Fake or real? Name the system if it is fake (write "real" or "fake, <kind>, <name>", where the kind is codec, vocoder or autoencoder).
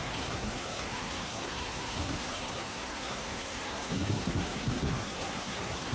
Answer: fake, codec, SNAC